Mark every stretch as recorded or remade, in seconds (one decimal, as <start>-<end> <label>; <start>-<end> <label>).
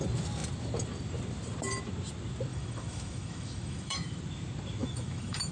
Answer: 0.0-2.5 recorded; 2.5-4.2 remade; 4.2-4.8 recorded; 4.8-5.5 remade